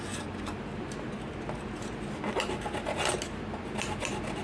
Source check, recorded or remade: recorded